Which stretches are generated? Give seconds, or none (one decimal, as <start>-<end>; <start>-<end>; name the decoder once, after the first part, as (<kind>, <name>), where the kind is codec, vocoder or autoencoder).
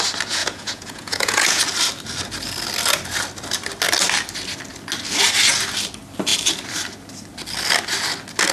0.4-1.6 (vocoder, Vocos)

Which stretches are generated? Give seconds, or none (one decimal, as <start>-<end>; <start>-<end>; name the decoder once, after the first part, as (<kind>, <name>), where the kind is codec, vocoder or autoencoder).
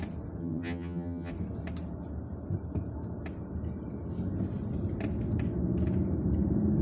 0.4-1.3 (vocoder, HiFi-GAN)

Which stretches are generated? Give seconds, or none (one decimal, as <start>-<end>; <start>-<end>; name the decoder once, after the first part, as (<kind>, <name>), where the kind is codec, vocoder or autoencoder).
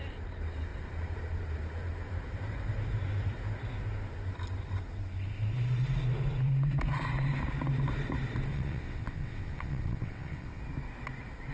8.5-10.6 (vocoder, WaveNeXt)